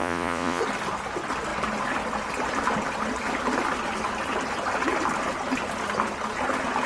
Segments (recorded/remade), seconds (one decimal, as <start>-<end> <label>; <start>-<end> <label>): 0.0-0.6 remade; 0.6-6.9 recorded